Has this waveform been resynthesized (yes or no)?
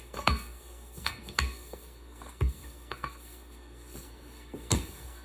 yes